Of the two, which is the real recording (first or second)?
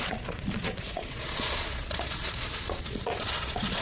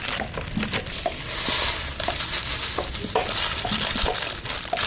second